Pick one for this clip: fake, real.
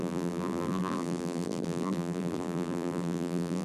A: fake